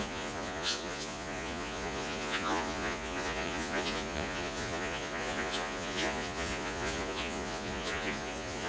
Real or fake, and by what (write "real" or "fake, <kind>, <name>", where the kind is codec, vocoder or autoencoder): fake, vocoder, Vocos